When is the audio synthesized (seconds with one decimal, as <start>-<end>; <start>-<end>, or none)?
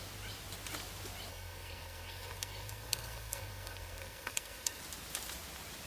1.3-4.8